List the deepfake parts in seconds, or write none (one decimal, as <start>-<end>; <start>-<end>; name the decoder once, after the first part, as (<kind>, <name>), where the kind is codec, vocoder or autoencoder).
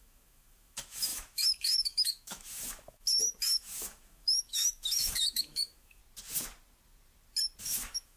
0.0-6.0 (autoencoder, DAC-VAE); 7.6-8.2